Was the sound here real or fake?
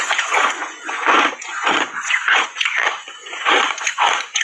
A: fake